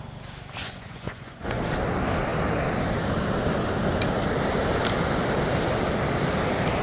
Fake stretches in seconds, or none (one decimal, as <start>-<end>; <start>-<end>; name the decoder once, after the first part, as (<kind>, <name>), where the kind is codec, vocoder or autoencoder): 0.6-1.6 (vocoder, Vocos)